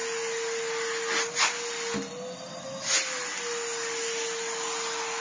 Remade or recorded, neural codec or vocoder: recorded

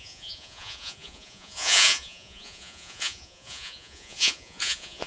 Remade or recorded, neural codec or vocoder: remade, vocoder, Vocos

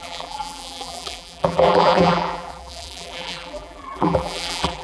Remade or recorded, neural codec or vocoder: remade, vocoder, BigVGAN v2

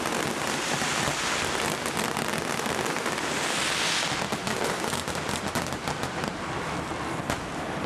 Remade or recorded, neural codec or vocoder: recorded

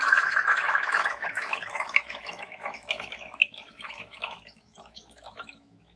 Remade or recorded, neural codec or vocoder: remade, autoencoder, DAC-VAE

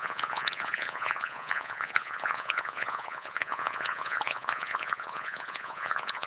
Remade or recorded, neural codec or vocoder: remade, vocoder, Vocos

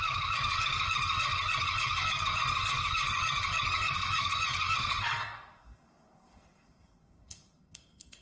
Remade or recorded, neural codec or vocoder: remade, codec, SNAC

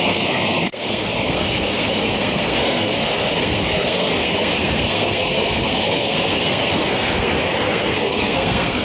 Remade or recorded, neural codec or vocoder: remade, codec, SNAC